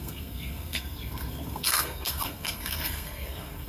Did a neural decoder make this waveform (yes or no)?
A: yes